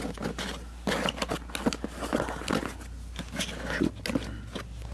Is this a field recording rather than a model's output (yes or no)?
yes